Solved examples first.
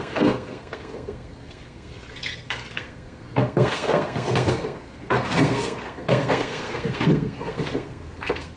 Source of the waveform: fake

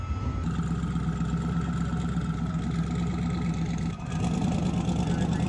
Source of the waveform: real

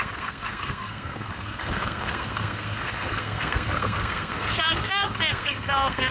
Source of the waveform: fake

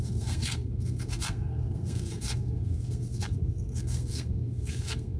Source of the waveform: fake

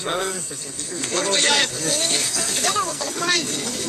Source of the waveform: fake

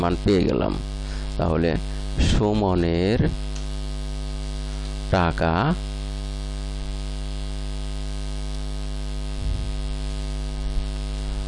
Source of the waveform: real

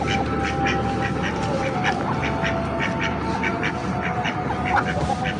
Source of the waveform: real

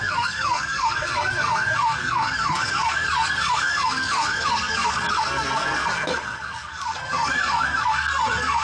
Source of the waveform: fake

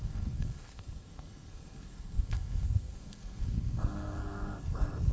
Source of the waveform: fake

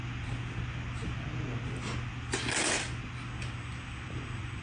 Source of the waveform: real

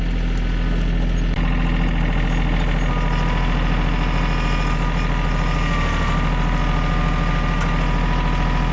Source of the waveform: real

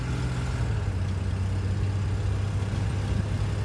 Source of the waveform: real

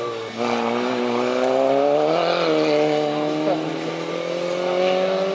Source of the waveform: real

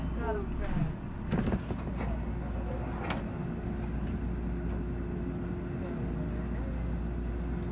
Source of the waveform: real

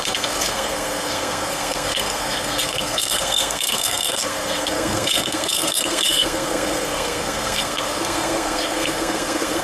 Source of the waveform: fake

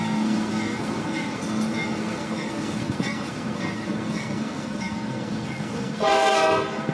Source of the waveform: fake